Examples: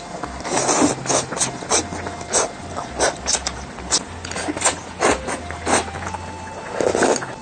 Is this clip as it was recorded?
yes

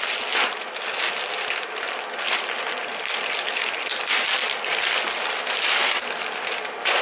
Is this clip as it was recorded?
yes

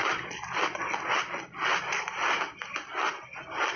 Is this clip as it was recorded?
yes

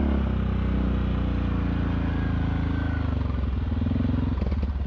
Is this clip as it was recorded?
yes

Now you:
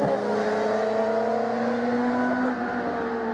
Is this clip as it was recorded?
yes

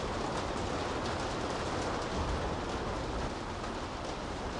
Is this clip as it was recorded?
yes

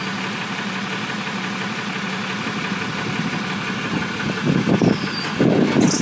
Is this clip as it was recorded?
yes